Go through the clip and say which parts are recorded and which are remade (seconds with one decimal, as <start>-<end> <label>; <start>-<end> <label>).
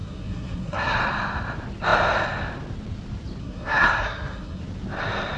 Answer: 0.0-1.0 remade; 1.0-3.4 recorded; 3.4-4.6 remade; 4.6-5.4 recorded